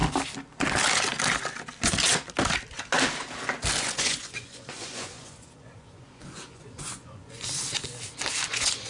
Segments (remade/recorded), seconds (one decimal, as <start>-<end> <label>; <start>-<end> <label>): 0.0-3.8 recorded; 3.8-7.5 remade; 7.5-8.5 recorded; 8.5-8.9 remade